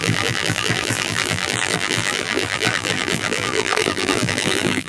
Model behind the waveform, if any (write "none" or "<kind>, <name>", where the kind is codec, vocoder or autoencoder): vocoder, BigVGAN v2